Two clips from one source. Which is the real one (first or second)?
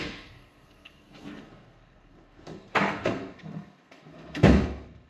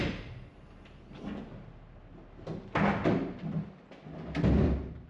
second